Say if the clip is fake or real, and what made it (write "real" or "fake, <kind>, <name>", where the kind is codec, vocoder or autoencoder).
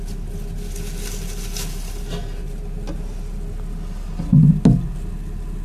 real